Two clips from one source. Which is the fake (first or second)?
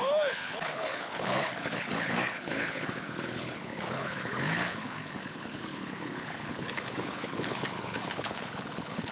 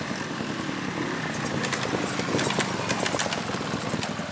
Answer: first